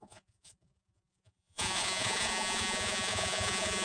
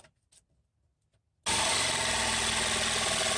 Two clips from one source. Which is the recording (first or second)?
second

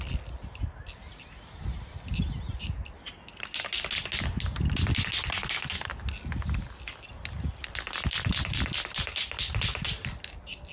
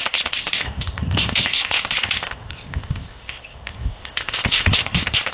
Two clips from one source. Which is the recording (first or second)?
first